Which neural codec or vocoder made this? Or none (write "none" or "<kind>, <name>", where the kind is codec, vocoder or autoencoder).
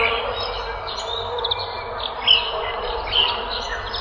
none